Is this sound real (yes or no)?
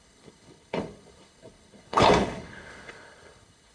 no